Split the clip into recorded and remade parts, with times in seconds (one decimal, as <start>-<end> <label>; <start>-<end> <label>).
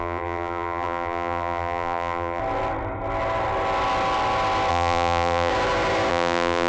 0.0-2.4 remade; 2.4-4.7 recorded; 4.7-5.5 remade; 5.5-6.1 recorded; 6.1-6.7 remade